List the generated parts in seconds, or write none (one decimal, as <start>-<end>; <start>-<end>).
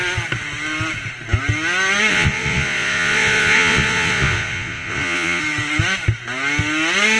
2.1-5.4